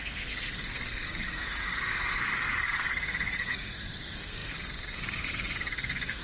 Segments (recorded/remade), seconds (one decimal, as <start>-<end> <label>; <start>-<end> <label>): 0.0-6.2 remade